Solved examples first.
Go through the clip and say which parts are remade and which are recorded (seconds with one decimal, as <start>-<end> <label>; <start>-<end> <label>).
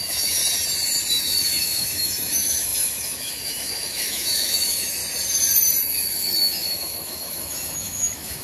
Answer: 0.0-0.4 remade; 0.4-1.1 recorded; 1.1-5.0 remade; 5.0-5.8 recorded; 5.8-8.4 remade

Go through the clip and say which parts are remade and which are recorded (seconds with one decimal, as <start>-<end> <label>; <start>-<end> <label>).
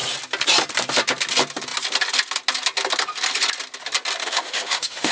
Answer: 0.0-4.2 recorded; 4.2-5.1 remade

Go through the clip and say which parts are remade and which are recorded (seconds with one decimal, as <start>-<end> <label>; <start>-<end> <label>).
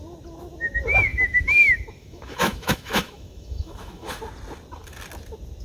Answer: 0.0-1.1 recorded; 1.1-4.2 remade; 4.2-5.6 recorded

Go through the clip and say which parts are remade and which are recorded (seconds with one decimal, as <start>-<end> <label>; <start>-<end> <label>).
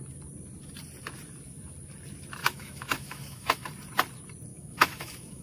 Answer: 0.0-2.4 recorded; 2.4-3.7 remade; 3.7-4.5 recorded; 4.5-5.4 remade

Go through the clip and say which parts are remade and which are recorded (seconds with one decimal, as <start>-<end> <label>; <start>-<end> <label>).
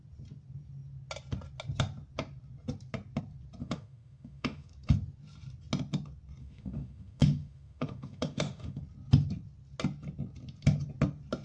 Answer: 0.0-3.6 recorded; 3.6-4.7 remade; 4.7-6.4 recorded; 6.4-8.8 remade; 8.8-11.4 recorded